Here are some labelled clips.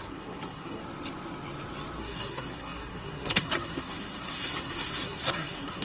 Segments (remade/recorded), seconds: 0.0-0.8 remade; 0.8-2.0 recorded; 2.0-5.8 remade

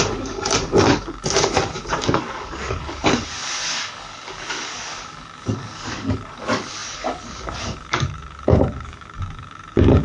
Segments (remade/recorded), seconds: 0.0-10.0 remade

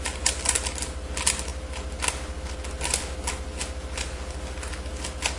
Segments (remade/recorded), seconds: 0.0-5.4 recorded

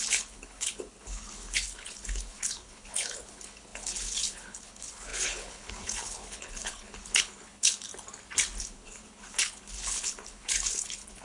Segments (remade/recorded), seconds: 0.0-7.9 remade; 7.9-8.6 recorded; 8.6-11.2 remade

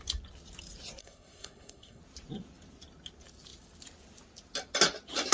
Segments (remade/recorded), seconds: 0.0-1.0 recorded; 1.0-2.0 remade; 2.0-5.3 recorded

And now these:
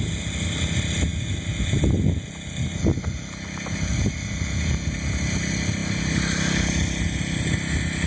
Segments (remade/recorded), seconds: 0.0-8.1 recorded